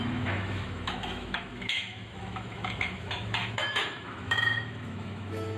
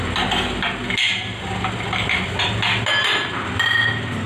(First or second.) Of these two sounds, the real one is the second